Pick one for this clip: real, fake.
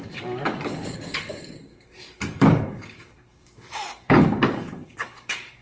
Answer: fake